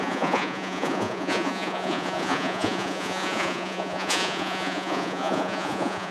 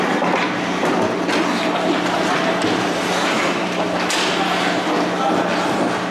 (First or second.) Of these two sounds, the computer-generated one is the first